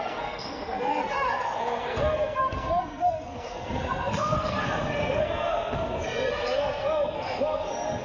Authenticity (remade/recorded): remade